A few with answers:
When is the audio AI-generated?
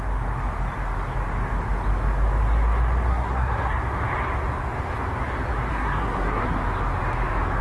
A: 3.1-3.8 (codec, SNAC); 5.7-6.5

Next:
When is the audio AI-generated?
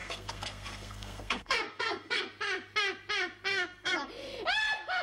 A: 0.0-2.2 (codec, SNAC); 3.5-4.1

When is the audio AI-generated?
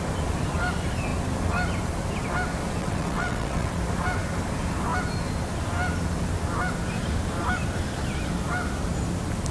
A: 2.8-3.8 (vocoder, WaveNeXt)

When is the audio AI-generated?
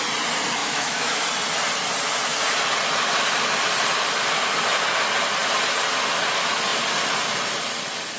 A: 0.6-1.2 (autoencoder, DAC-VAE)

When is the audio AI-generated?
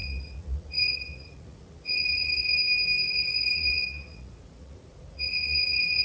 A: 0.0-2.6 (vocoder, Vocos); 3.1-6.0